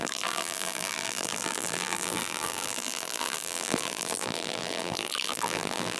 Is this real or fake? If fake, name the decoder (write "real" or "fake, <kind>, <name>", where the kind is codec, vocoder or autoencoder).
fake, vocoder, BigVGAN v2